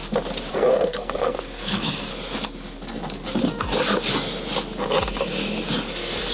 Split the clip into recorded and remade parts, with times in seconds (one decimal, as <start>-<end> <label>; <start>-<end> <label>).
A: 0.0-0.5 recorded; 0.5-2.1 remade; 2.1-6.3 recorded